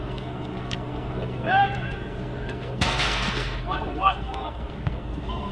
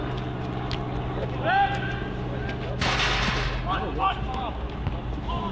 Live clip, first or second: second